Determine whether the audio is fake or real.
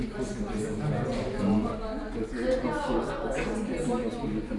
real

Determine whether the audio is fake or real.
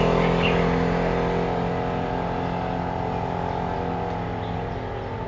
real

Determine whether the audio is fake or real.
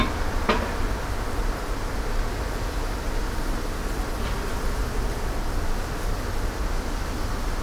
real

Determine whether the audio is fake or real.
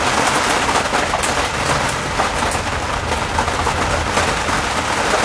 real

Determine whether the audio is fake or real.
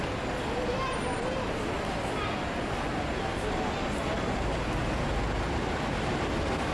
real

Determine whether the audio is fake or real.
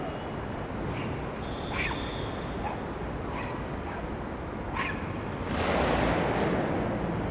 real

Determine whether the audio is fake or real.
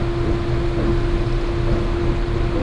real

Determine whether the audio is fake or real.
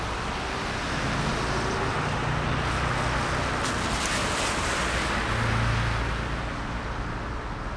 real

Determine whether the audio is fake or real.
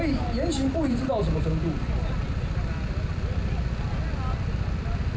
real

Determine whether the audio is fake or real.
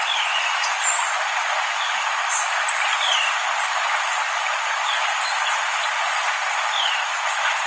real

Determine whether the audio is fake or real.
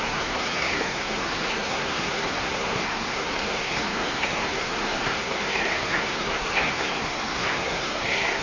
fake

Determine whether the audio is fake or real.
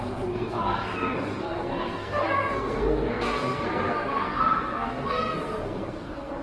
fake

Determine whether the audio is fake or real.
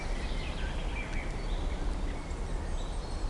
real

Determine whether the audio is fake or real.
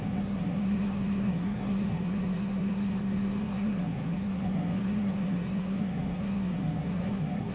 fake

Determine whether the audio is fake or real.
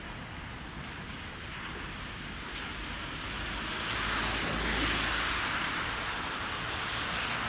real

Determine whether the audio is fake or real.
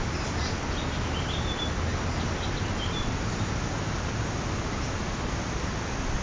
real